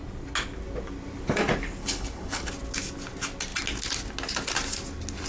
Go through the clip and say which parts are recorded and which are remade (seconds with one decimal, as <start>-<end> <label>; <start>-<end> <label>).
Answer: 0.0-1.8 recorded; 1.8-2.5 remade; 2.5-5.3 recorded